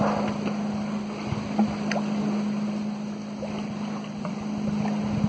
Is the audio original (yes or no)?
yes